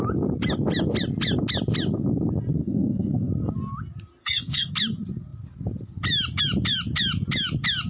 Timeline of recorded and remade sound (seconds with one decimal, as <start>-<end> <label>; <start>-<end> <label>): 0.0-2.6 recorded; 2.6-3.3 remade; 3.3-4.2 recorded; 4.2-4.7 remade; 4.7-7.9 recorded